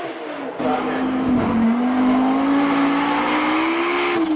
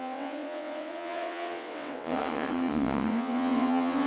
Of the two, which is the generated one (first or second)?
second